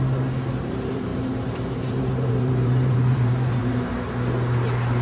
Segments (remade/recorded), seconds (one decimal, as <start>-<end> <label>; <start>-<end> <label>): 0.0-1.1 recorded; 1.1-4.1 remade; 4.1-5.0 recorded